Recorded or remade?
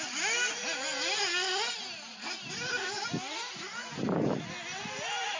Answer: recorded